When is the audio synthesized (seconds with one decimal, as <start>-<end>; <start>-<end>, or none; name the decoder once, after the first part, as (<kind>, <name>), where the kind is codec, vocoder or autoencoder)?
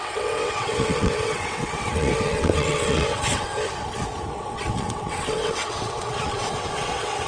0.0-3.5 (vocoder, WaveNeXt); 4.3-7.3